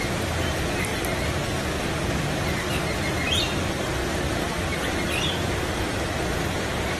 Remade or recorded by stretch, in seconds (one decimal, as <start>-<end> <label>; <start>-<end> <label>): 0.0-7.0 recorded

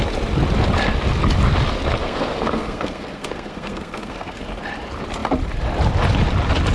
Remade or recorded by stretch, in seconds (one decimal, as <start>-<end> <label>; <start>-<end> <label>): 0.0-2.0 recorded; 2.0-4.4 remade; 4.4-6.7 recorded